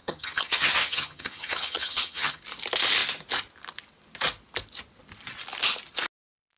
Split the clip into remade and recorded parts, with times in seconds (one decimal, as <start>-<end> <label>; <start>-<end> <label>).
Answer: 0.0-2.4 remade; 2.4-6.6 recorded